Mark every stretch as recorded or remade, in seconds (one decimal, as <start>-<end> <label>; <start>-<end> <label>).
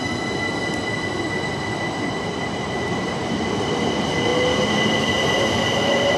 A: 0.0-2.3 recorded; 2.3-4.3 remade; 4.3-4.9 recorded; 4.9-6.2 remade